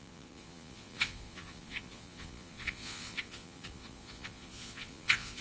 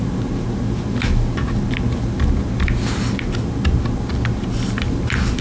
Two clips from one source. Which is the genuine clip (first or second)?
second